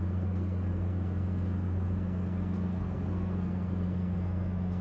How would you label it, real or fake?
fake